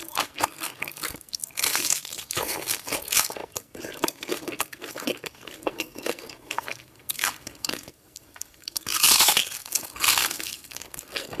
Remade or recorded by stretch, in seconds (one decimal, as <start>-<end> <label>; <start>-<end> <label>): 0.0-11.4 remade